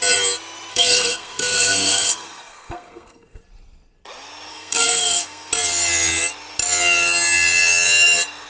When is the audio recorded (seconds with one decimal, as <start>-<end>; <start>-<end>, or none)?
0.0-0.7; 3.4-4.5; 5.5-8.5